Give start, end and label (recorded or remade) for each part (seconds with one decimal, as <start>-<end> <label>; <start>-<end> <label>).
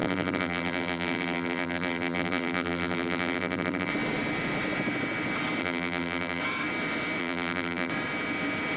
0.0-3.9 remade; 3.9-5.6 recorded; 5.6-6.4 remade; 6.4-7.2 recorded; 7.2-7.9 remade; 7.9-8.8 recorded